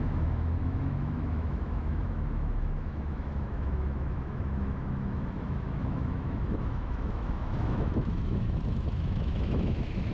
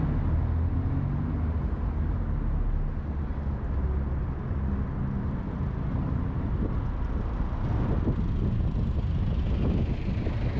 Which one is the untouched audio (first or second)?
second